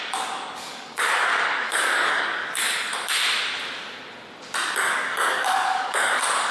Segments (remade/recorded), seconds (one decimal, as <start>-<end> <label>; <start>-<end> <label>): 0.0-2.9 remade; 2.9-4.9 recorded; 4.9-6.5 remade